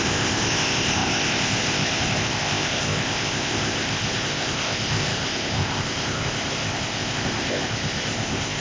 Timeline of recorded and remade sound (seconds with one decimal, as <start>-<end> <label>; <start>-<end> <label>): 0.0-8.6 remade

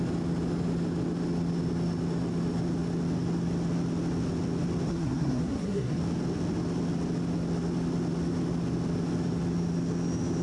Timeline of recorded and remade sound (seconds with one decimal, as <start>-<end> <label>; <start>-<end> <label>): 0.0-4.9 recorded; 4.9-6.0 remade; 6.0-10.4 recorded

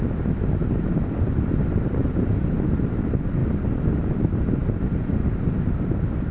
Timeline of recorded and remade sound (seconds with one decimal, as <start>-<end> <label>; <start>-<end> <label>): 0.0-0.6 recorded; 0.6-2.7 remade; 2.7-4.6 recorded; 4.6-6.3 remade

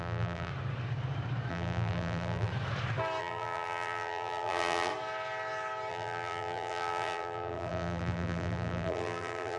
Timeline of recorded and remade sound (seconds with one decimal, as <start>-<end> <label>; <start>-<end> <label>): 0.0-0.5 remade; 0.5-1.5 recorded; 1.5-2.5 remade; 2.5-3.2 recorded; 3.2-4.9 remade; 4.9-5.9 recorded; 5.9-9.6 remade

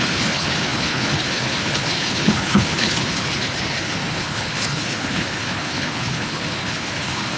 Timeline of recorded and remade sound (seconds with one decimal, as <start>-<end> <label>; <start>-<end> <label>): 0.0-7.4 remade

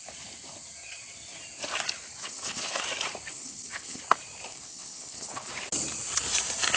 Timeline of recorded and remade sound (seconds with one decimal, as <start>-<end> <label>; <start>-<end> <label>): 0.0-2.2 recorded; 2.2-2.8 remade; 2.8-3.3 recorded; 3.3-4.0 remade; 4.0-4.5 recorded; 4.5-5.5 remade; 5.5-6.8 recorded

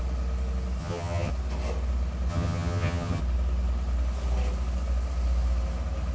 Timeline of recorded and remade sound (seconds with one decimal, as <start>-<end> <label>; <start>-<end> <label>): 0.0-0.8 recorded; 0.8-1.3 remade; 1.3-2.3 recorded; 2.3-3.2 remade; 3.2-6.1 recorded